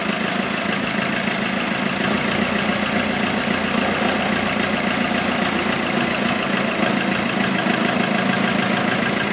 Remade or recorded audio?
recorded